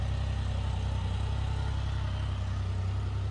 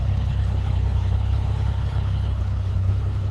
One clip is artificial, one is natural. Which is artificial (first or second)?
second